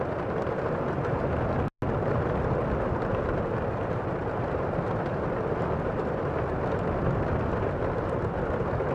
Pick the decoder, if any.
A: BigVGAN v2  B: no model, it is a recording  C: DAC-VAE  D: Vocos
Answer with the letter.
B